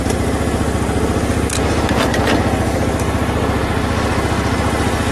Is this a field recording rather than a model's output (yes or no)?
yes